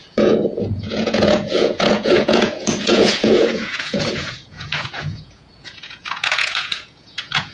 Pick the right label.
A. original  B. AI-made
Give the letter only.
B